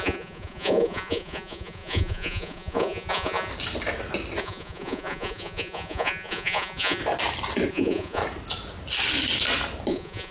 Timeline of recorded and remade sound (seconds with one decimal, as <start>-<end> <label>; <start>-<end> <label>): 0.0-3.5 remade; 3.5-4.4 recorded; 4.4-7.0 remade; 7.0-7.7 recorded; 7.7-8.2 remade; 8.2-9.9 recorded; 9.9-10.3 remade